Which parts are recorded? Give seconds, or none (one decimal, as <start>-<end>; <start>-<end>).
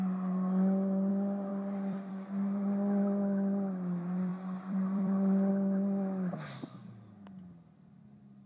0.0-1.5; 2.1-4.3; 5.5-8.5